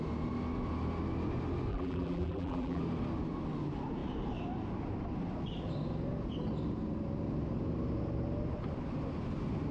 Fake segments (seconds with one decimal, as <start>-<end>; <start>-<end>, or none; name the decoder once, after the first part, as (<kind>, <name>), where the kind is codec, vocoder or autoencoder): 1.7-2.8 (vocoder, BigVGAN v2)

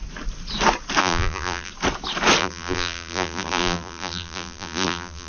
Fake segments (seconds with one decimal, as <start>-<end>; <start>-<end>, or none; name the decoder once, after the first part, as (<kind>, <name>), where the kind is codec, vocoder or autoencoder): 1.0-1.7 (vocoder, BigVGAN v2); 2.4-5.3

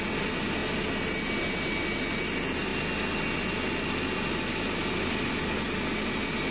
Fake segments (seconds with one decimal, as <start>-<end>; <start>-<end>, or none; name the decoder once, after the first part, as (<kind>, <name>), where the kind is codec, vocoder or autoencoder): none

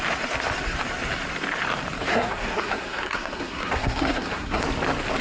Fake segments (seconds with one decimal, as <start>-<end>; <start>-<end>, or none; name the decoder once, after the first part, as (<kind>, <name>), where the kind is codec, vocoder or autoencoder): 2.1-4.6 (codec, SNAC)

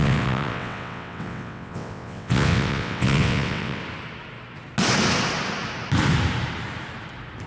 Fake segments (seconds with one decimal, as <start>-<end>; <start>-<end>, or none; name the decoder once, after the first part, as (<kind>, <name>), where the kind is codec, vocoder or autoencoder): 0.0-3.8 (vocoder, WaveNeXt)